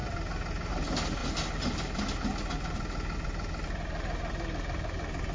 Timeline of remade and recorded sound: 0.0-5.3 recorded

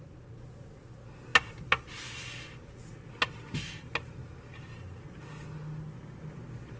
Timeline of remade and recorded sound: 0.0-6.8 recorded

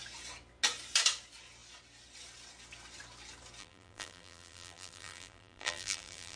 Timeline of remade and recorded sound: 0.0-3.6 recorded; 3.6-6.4 remade

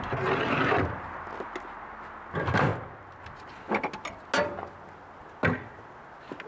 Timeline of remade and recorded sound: 0.0-6.5 recorded

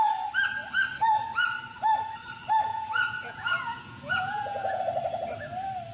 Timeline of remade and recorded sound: 0.0-2.7 recorded; 2.7-4.8 remade; 4.8-5.9 recorded